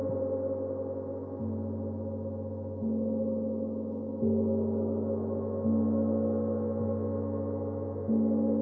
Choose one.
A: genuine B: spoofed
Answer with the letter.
A